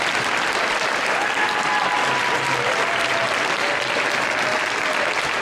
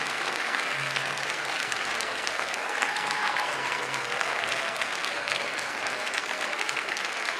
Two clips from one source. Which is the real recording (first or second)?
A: first